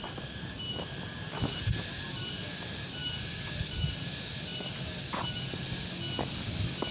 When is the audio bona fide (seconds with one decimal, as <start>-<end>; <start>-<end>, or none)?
0.0-6.9